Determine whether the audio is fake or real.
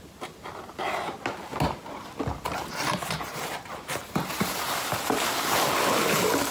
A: real